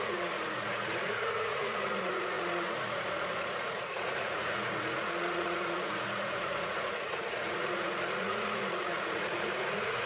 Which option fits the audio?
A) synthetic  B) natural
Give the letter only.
A